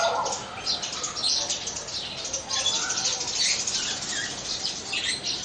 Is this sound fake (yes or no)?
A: no